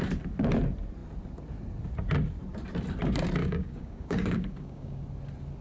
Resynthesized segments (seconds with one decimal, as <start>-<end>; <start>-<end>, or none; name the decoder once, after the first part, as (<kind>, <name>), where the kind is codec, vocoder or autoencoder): 3.4-5.0 (codec, DAC)